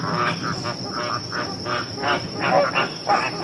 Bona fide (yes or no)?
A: yes